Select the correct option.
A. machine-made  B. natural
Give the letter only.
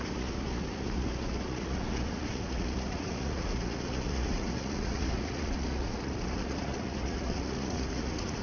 A